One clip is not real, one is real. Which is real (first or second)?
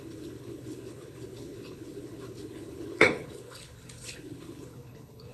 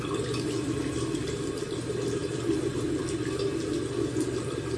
second